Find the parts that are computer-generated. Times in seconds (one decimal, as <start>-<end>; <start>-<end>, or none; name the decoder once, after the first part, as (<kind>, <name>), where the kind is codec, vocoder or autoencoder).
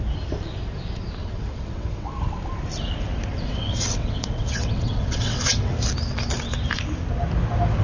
1.2-2.2 (vocoder, WaveNeXt); 3.3-5.7